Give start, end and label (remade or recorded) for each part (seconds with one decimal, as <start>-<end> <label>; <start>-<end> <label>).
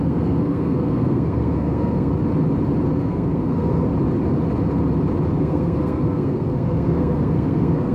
0.0-2.1 remade; 2.1-3.0 recorded; 3.0-3.9 remade; 3.9-5.4 recorded; 5.4-7.9 remade